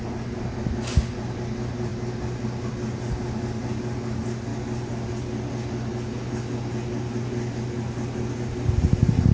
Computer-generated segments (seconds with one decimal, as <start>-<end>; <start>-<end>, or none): none